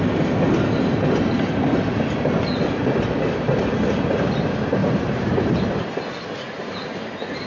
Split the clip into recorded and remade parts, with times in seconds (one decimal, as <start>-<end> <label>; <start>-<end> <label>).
0.0-4.8 recorded; 4.8-5.8 remade; 5.8-7.5 recorded